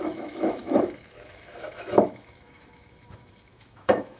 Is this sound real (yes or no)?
no